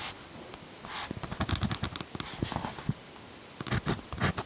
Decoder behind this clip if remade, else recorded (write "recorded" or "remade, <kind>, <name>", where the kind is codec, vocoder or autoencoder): recorded